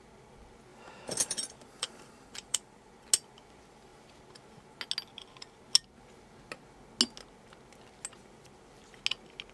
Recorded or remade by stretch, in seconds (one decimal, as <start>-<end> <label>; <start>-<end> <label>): 0.0-0.7 recorded; 0.7-2.9 remade; 2.9-8.2 recorded; 8.2-8.7 remade; 8.7-9.5 recorded